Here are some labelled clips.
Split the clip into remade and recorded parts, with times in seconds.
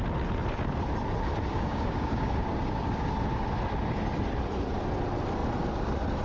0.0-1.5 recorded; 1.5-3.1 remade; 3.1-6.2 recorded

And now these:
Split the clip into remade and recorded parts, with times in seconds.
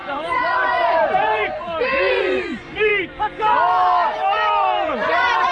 0.0-2.9 remade; 2.9-4.9 recorded; 4.9-5.5 remade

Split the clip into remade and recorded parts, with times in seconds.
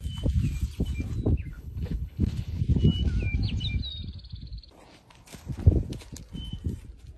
0.0-1.5 recorded; 1.5-2.6 remade; 2.6-7.2 recorded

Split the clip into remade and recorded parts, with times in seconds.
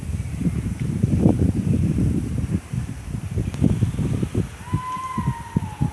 0.0-0.4 recorded; 0.4-3.5 remade; 3.5-5.9 recorded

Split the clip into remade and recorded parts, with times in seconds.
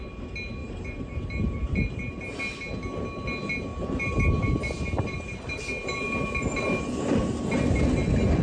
0.0-0.6 recorded; 0.6-2.4 remade; 2.4-3.7 recorded; 3.7-5.6 remade; 5.6-6.5 recorded; 6.5-7.2 remade; 7.2-8.4 recorded